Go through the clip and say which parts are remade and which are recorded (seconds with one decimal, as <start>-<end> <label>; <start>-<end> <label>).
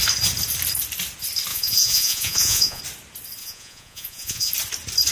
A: 0.0-1.5 recorded; 1.5-2.8 remade; 2.8-3.4 recorded; 3.4-4.5 remade; 4.5-5.1 recorded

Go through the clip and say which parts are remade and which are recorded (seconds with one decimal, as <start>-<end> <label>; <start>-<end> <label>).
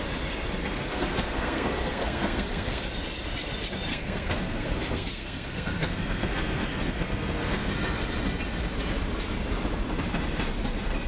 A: 0.0-0.6 recorded; 0.6-2.9 remade; 2.9-3.9 recorded; 3.9-7.7 remade; 7.7-11.1 recorded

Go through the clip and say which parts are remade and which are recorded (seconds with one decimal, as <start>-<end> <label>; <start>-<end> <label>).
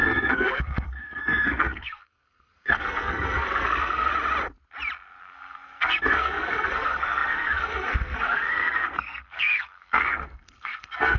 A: 0.0-4.1 remade; 4.1-5.2 recorded; 5.2-11.2 remade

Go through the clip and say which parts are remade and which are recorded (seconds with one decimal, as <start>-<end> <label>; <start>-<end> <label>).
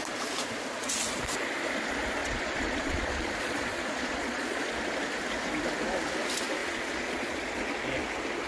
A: 0.0-2.2 recorded; 2.2-4.7 remade; 4.7-6.6 recorded; 6.6-7.6 remade; 7.6-8.5 recorded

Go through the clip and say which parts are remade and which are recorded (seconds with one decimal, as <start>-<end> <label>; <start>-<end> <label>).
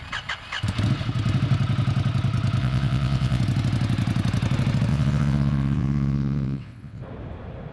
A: 0.0-2.6 recorded; 2.6-3.4 remade; 3.4-4.9 recorded; 4.9-7.0 remade; 7.0-7.7 recorded